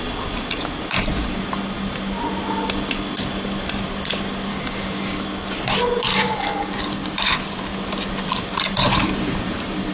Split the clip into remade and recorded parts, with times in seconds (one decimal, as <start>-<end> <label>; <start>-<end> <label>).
0.0-4.5 recorded; 4.5-5.2 remade; 5.2-6.1 recorded; 6.1-6.7 remade; 6.7-9.9 recorded